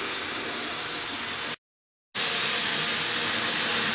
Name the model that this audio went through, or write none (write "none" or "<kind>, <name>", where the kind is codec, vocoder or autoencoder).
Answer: none